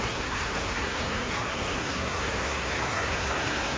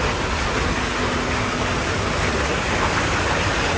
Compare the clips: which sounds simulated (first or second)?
first